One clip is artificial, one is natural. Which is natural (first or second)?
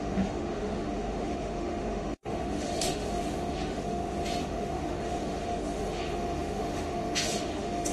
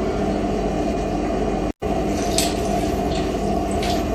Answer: second